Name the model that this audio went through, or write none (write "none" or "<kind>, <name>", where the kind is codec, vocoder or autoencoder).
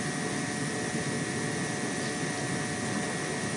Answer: none